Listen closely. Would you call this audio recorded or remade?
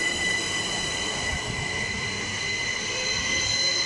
recorded